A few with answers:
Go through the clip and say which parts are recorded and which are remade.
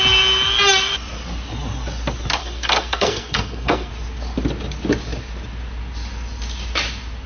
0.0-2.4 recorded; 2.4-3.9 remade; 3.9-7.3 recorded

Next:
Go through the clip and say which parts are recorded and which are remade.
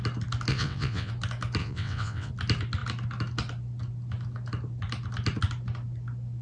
0.0-0.5 recorded; 0.5-1.1 remade; 1.1-1.6 recorded; 1.6-2.3 remade; 2.3-6.4 recorded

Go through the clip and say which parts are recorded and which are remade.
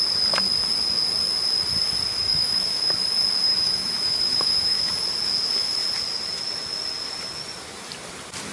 0.0-2.1 recorded; 2.1-2.8 remade; 2.8-3.5 recorded; 3.5-5.0 remade; 5.0-8.5 recorded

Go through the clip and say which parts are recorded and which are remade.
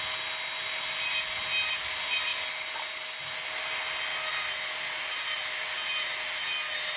0.0-7.0 recorded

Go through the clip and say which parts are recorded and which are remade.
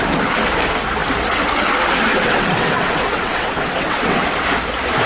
0.0-2.1 recorded; 2.1-4.2 remade; 4.2-5.1 recorded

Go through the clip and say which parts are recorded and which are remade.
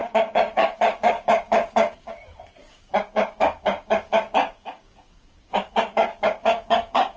0.0-2.1 remade; 2.1-2.6 recorded; 2.6-7.2 remade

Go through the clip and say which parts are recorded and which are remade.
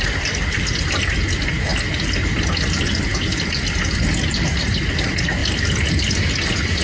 0.0-6.8 recorded